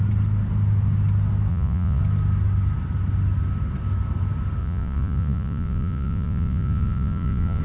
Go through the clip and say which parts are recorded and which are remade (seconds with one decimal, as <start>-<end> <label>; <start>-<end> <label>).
0.0-1.5 recorded; 1.5-2.0 remade; 2.0-4.6 recorded; 4.6-7.6 remade